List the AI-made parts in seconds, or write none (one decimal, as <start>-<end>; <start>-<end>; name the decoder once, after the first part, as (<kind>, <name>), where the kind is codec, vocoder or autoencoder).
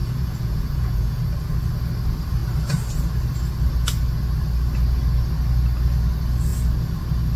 0.0-1.2 (vocoder, Vocos)